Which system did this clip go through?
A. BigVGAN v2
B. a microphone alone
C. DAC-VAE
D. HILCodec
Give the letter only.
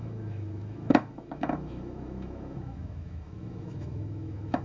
C